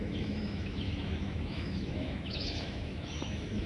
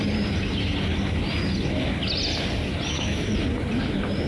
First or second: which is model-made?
first